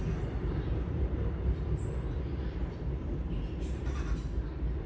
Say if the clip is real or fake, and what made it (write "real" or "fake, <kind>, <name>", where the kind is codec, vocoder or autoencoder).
fake, vocoder, BigVGAN v2